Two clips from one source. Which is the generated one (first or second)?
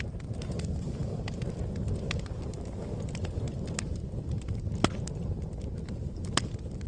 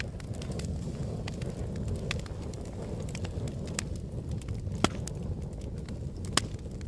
first